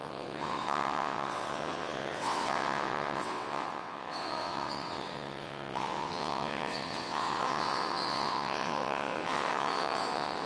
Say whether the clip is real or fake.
fake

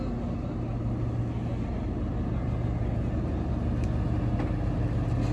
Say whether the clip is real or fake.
real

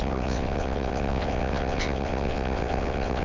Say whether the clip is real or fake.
fake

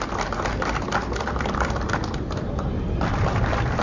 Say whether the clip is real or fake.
real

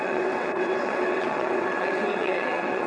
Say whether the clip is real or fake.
fake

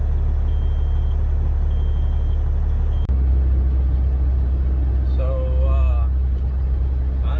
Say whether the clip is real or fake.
real